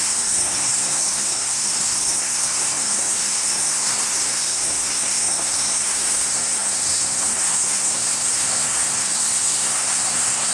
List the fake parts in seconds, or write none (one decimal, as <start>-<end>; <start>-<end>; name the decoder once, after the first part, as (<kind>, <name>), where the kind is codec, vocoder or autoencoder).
0.0-10.5 (codec, SNAC)